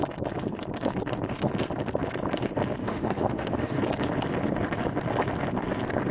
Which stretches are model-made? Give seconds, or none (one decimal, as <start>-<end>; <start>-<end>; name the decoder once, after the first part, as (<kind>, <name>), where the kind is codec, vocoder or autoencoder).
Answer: 2.8-3.8 (autoencoder, DAC-VAE)